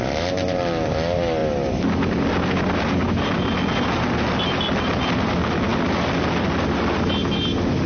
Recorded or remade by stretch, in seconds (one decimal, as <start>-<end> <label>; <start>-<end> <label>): 0.0-7.9 recorded